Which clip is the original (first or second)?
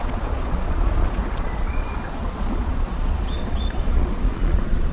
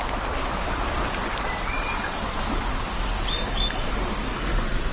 second